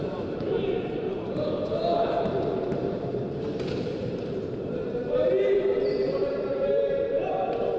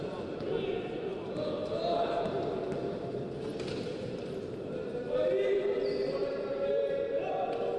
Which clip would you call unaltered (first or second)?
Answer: second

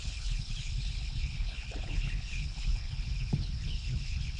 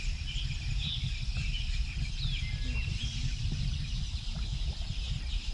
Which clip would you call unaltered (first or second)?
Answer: second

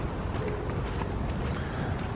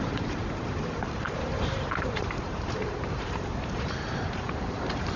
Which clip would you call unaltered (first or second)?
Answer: first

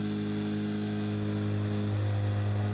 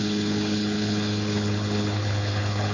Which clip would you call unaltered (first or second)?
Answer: first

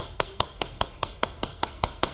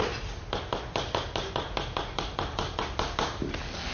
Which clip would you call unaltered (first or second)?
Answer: second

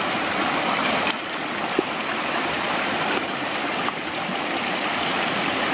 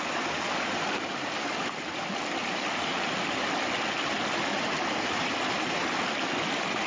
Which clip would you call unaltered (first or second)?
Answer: second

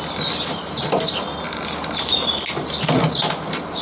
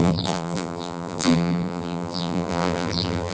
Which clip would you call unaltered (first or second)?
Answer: first